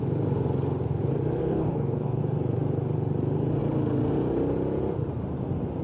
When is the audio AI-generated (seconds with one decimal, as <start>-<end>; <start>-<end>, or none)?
1.4-2.2